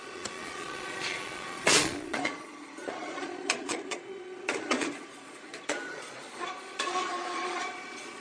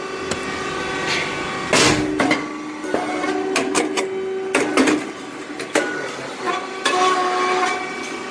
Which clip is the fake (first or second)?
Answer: first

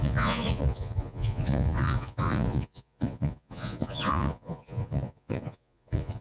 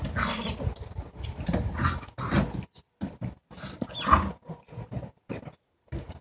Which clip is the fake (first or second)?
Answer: first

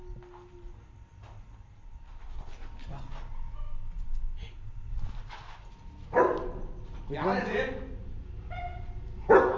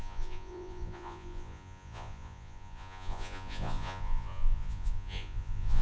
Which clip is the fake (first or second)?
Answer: second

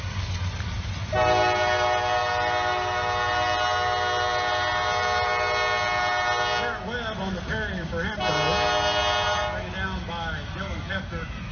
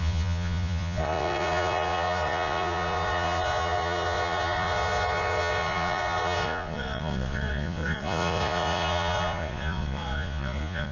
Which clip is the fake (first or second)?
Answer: second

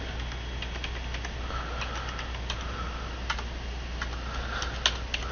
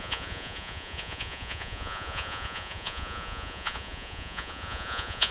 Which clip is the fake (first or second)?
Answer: second